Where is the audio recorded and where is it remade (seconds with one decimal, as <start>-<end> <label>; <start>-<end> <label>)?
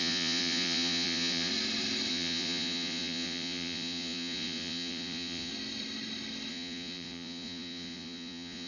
0.0-1.5 remade; 1.5-2.1 recorded; 2.1-5.5 remade; 5.5-6.5 recorded; 6.5-8.7 remade